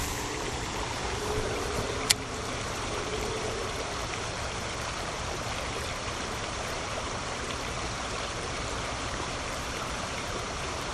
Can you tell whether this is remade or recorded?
remade